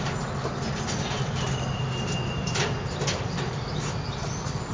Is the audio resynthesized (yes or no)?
no